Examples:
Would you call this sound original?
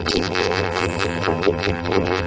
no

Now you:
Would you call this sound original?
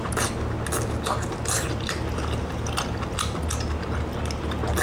yes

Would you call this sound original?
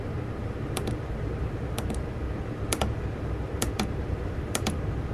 no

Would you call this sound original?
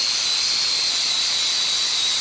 yes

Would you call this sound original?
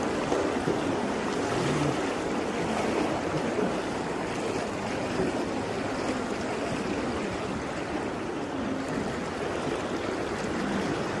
yes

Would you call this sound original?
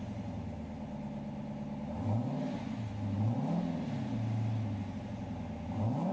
yes